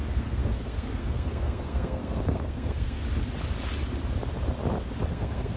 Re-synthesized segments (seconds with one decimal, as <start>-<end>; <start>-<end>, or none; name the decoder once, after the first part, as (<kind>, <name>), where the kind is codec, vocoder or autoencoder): 0.0-3.0 (codec, SNAC); 5.1-5.6